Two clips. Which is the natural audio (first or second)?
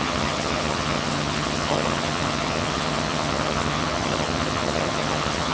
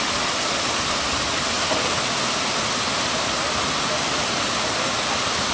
second